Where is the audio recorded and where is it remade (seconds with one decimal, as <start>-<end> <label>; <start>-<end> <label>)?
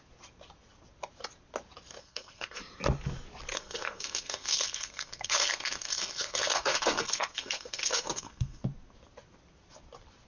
0.0-2.0 recorded; 2.0-2.6 remade; 2.6-3.5 recorded; 3.5-8.6 remade; 8.6-10.3 recorded